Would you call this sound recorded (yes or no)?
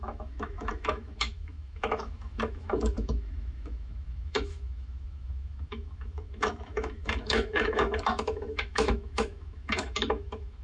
no